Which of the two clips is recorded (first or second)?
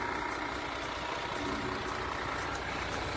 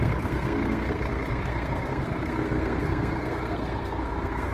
first